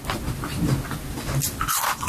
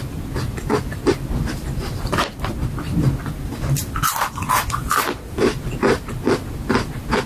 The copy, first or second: second